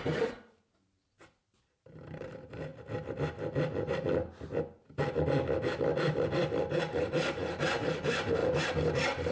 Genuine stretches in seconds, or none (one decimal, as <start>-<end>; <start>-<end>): 2.7-6.8; 8.4-8.9